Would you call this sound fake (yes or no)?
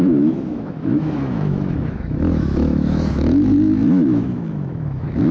yes